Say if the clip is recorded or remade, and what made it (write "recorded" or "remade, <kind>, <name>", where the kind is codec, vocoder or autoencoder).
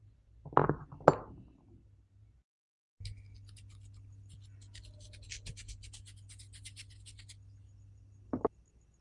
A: recorded